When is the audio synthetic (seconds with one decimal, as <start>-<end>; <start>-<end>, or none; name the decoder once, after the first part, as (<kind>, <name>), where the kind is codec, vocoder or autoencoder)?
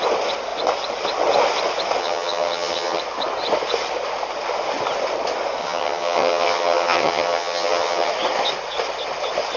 2.0-3.0 (vocoder, HiFi-GAN); 5.6-8.1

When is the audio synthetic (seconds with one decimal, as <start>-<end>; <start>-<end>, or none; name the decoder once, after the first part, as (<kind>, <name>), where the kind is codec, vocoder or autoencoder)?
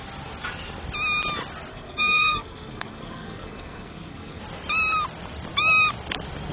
1.7-4.4 (codec, SNAC)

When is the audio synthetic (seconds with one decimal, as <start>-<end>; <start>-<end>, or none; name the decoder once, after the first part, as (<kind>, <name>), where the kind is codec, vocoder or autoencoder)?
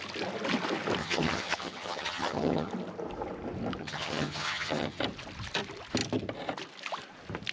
1.0-2.7 (vocoder, HiFi-GAN); 3.8-5.0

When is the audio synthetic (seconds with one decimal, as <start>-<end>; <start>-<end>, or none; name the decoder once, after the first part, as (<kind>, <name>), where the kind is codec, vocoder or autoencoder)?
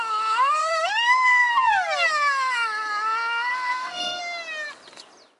0.6-1.5 (codec, SNAC); 3.5-4.2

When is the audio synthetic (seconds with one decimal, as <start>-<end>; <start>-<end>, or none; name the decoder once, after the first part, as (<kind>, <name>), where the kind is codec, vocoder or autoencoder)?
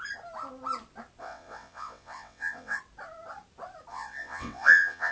1.2-2.8 (vocoder, WaveNeXt); 3.9-5.1